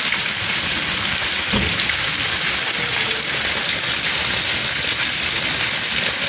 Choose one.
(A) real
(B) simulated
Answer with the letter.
A